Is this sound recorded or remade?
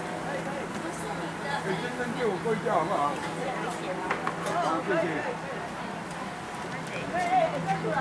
recorded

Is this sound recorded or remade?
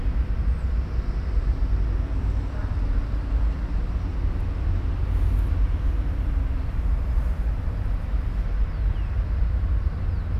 recorded